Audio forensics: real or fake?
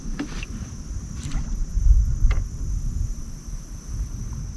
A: real